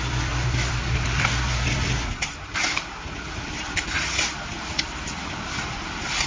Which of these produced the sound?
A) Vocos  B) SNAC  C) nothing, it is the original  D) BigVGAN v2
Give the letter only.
D